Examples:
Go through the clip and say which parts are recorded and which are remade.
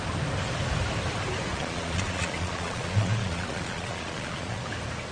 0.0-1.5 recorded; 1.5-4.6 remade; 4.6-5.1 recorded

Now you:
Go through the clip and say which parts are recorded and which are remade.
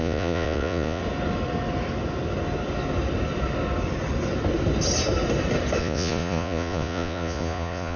0.0-1.0 remade; 1.0-5.8 recorded; 5.8-8.0 remade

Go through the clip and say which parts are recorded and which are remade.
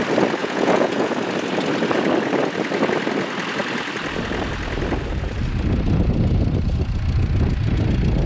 0.0-0.4 recorded; 0.4-1.1 remade; 1.1-8.3 recorded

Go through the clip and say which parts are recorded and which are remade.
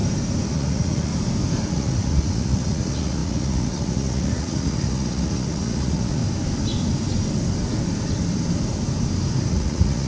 0.0-0.5 recorded; 0.5-1.1 remade; 1.1-1.7 recorded; 1.7-6.2 remade; 6.2-9.5 recorded; 9.5-10.1 remade